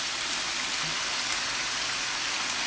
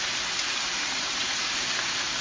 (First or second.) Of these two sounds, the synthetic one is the second